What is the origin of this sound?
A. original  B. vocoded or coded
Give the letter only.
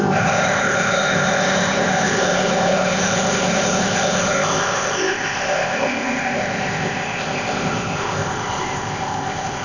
B